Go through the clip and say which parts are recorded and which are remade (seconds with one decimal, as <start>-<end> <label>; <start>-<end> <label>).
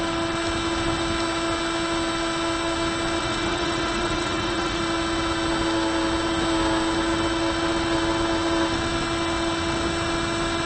0.0-3.2 recorded; 3.2-4.8 remade; 4.8-10.7 recorded